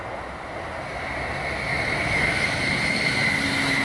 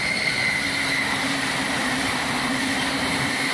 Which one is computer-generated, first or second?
second